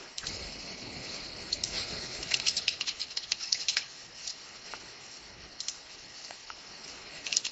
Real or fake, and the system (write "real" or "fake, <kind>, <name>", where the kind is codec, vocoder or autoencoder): fake, codec, HILCodec